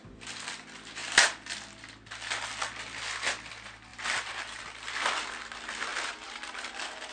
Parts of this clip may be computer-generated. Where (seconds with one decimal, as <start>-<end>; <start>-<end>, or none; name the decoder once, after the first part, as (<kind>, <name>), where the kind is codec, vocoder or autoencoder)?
3.9-4.6 (vocoder, BigVGAN v2); 5.9-7.1